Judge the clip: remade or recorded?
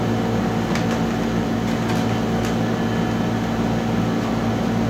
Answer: recorded